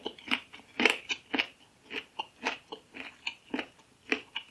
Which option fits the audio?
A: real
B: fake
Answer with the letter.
A